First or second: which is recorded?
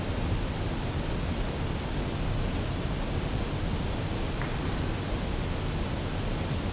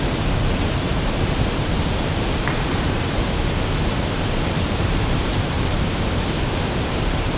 first